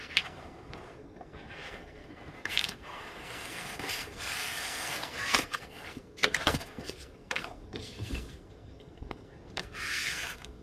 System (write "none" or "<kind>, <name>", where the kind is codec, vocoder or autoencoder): codec, SNAC